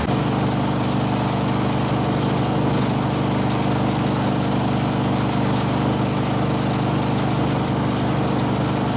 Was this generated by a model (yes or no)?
no